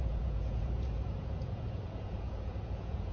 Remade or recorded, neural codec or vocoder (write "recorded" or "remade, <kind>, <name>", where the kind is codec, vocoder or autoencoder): remade, vocoder, Vocos